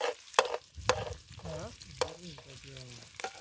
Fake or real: real